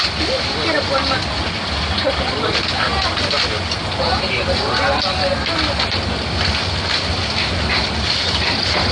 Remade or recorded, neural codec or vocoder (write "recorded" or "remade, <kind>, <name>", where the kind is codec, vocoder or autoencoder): recorded